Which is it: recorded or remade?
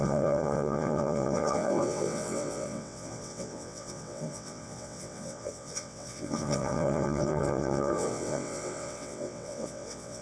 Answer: remade